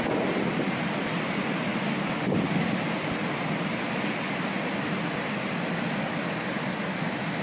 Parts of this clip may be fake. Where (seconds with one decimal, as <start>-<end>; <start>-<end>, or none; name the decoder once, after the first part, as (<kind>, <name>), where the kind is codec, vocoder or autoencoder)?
none